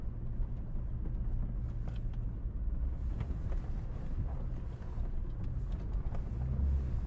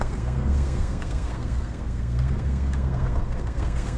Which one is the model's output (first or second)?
second